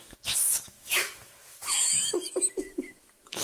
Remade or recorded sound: remade